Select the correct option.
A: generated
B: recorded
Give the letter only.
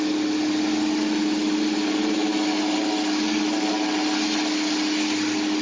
B